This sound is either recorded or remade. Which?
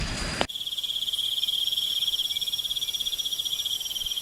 remade